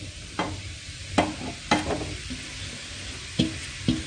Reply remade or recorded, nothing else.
recorded